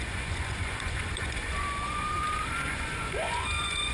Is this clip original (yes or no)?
no